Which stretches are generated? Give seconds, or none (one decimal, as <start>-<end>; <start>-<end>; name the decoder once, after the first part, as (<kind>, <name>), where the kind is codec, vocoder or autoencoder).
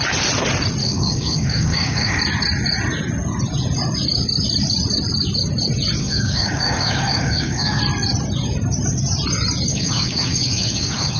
0.8-2.2 (codec, DAC); 6.0-7.8; 9.7-11.2